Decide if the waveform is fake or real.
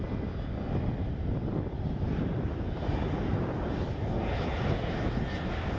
real